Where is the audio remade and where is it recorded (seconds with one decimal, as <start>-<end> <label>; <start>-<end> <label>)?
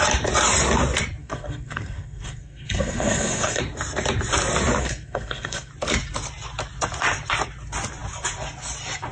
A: 0.0-1.2 recorded; 1.2-3.6 remade; 3.6-4.8 recorded; 4.8-5.7 remade; 5.7-9.1 recorded